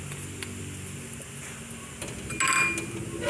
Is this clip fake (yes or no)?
no